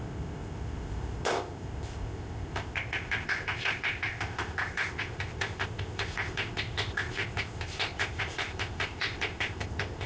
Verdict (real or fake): fake